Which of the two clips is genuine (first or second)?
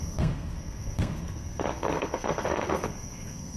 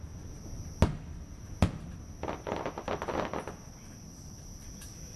second